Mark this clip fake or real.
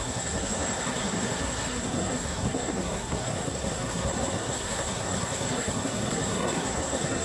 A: fake